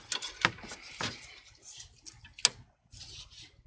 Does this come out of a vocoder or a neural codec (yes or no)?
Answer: no